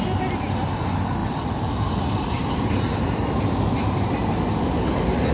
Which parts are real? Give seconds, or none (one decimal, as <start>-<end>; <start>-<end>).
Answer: 0.0-1.2; 3.4-5.3